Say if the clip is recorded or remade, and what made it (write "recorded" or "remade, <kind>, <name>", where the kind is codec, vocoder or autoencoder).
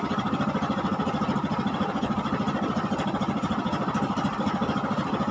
remade, vocoder, BigVGAN v2